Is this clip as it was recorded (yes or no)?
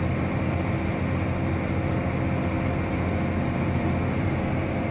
yes